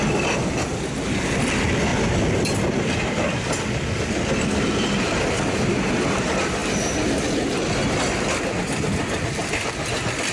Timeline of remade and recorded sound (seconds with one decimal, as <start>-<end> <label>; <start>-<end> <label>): 0.0-10.3 recorded